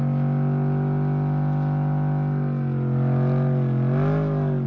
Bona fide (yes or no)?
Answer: yes